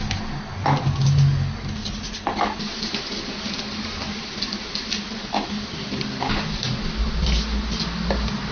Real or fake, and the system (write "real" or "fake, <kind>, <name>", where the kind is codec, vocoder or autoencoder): real